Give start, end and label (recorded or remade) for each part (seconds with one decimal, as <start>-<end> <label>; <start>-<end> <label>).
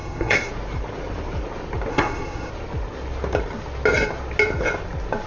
0.0-0.5 remade; 0.5-1.9 recorded; 1.9-2.5 remade; 2.5-5.3 recorded